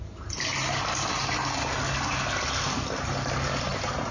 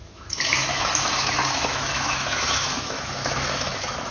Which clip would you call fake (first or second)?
second